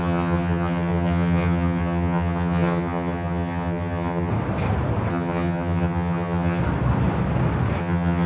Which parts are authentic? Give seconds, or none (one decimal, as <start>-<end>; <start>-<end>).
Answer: 4.3-5.1; 6.6-7.8